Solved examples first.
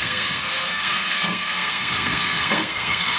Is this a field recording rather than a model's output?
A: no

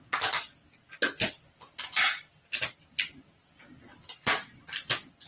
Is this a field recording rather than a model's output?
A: yes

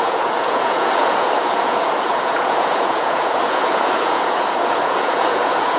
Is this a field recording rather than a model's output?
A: no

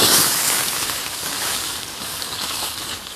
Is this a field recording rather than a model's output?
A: no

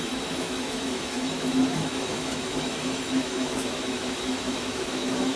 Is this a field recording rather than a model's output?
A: no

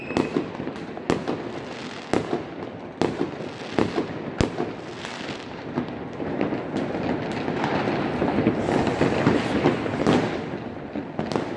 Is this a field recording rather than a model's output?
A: yes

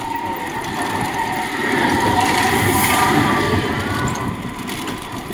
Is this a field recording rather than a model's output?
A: no